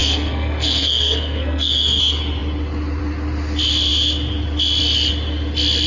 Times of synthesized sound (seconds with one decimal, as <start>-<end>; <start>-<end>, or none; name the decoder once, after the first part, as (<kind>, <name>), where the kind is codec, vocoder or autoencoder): 0.0-2.0 (codec, SNAC)